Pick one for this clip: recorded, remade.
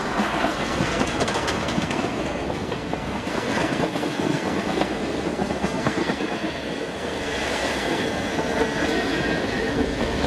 remade